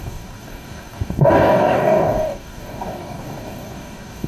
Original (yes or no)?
no